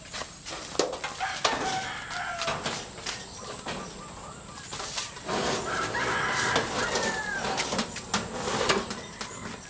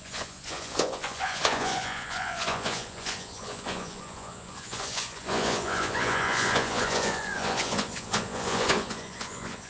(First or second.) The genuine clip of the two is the first